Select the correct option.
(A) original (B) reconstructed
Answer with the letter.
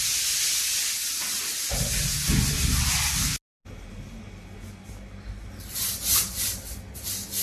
A